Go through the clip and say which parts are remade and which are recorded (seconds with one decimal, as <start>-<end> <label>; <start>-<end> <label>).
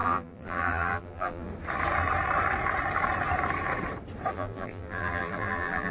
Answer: 0.0-1.5 remade; 1.5-4.3 recorded; 4.3-5.9 remade